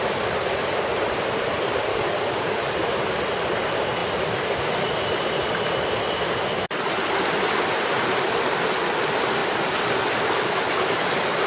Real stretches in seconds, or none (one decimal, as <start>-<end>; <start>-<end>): 0.0-1.9; 2.6-11.5